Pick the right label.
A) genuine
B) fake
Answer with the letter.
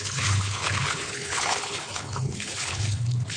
B